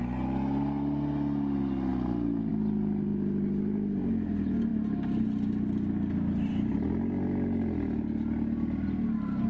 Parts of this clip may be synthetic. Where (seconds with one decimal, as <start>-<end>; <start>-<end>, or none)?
none